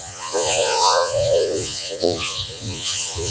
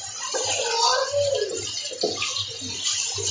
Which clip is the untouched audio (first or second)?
second